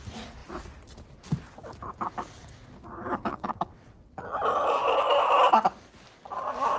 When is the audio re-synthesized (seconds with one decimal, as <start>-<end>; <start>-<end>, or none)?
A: 3.3-4.1